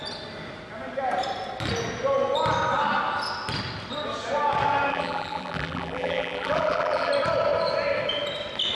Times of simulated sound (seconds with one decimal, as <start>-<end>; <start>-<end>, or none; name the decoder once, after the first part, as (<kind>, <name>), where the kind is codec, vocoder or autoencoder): 4.9-7.1 (vocoder, BigVGAN v2)